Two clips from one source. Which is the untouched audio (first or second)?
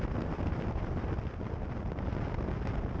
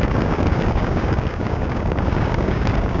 first